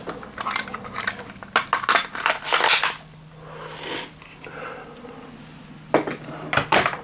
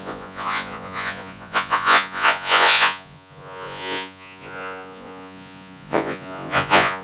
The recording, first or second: first